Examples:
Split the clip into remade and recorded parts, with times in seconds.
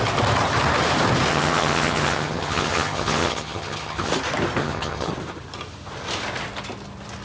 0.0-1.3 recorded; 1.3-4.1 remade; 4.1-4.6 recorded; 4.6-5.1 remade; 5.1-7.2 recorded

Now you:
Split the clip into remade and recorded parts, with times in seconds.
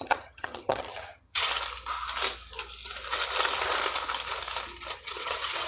0.0-1.5 remade; 1.5-4.9 recorded; 4.9-5.7 remade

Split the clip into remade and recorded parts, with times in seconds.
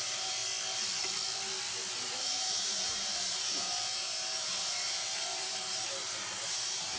0.0-0.4 remade; 0.4-1.9 recorded; 1.9-7.0 remade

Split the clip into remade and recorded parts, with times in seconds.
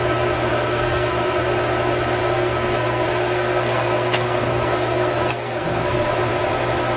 0.0-0.5 recorded; 0.5-1.4 remade; 1.4-2.2 recorded; 2.2-6.1 remade; 6.1-7.0 recorded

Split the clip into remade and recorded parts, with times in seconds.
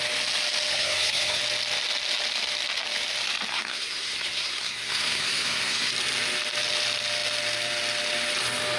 0.0-0.7 recorded; 0.7-1.4 remade; 1.4-3.5 recorded; 3.5-5.9 remade; 5.9-8.8 recorded